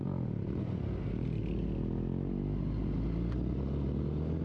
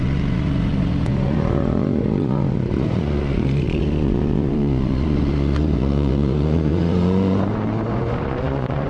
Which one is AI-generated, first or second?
second